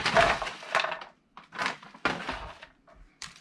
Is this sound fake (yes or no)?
yes